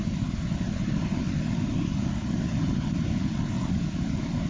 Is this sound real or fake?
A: real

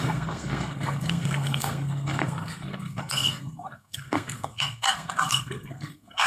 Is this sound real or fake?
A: fake